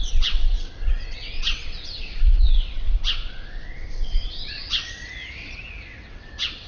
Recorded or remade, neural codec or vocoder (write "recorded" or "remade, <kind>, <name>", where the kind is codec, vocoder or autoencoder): remade, vocoder, WaveNeXt